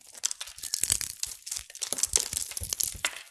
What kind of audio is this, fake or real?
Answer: real